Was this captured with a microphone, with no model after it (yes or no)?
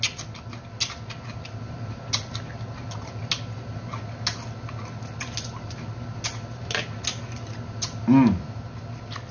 yes